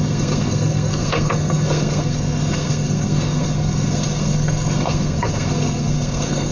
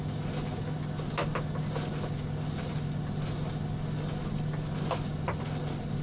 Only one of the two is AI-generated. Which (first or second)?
first